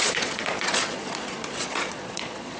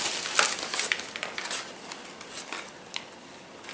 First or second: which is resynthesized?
first